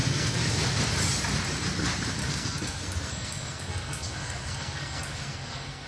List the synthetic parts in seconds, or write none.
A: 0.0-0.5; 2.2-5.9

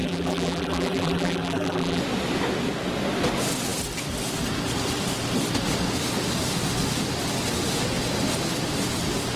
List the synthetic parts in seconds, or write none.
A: 0.0-2.0

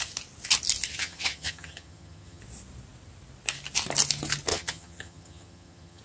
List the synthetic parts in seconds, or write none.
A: 0.9-2.4; 4.5-6.0

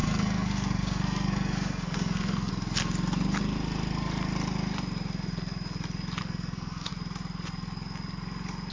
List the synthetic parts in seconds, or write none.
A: 0.0-2.5; 6.2-6.9

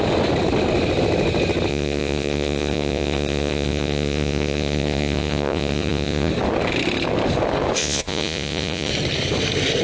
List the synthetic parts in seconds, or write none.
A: 1.7-6.3; 7.8-8.9